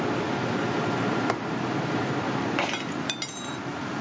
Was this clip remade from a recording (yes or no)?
no